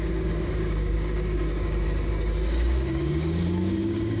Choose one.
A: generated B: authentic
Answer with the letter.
A